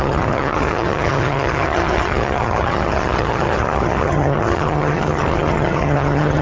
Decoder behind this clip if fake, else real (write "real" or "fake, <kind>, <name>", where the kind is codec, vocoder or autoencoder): fake, vocoder, HiFi-GAN